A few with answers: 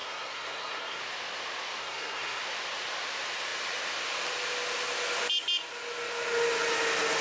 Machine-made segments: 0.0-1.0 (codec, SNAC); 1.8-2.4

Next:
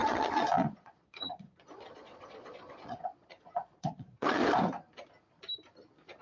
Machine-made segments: 0.0-4.4 (vocoder, Vocos)